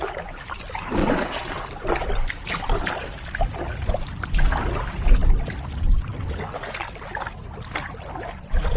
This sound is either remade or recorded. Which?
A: recorded